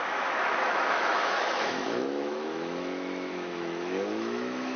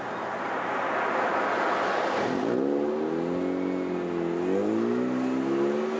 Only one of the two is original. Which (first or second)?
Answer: second